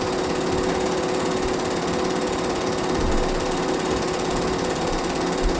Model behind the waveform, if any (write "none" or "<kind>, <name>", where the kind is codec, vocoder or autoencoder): none